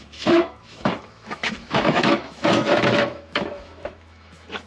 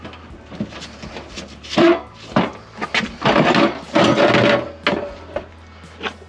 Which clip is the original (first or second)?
second